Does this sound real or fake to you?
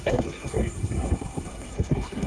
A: fake